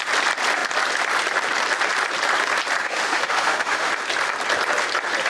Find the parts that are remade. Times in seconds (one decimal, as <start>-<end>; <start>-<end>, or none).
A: 2.8-3.9

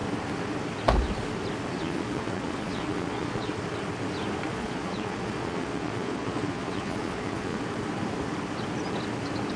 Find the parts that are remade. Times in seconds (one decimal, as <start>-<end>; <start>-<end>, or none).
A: 1.7-3.5; 4.5-7.6

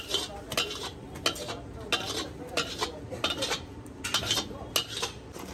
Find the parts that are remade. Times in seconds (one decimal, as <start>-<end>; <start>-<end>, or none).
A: none